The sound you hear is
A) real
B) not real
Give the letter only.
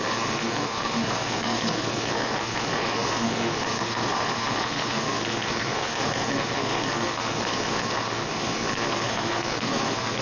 B